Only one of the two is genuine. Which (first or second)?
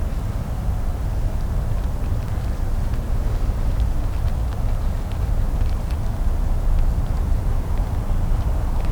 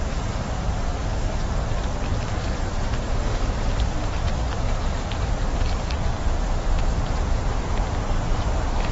first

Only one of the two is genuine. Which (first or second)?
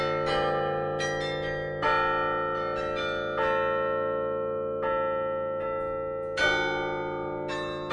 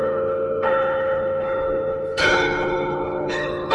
first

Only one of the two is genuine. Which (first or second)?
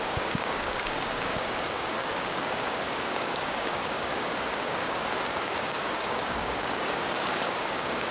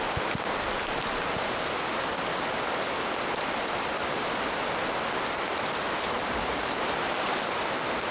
second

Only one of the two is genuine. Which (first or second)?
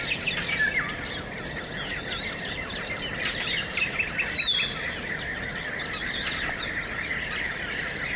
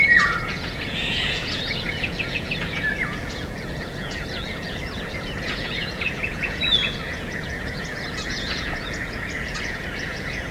first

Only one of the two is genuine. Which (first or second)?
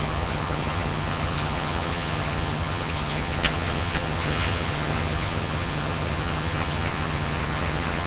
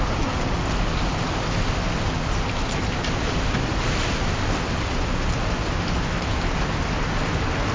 second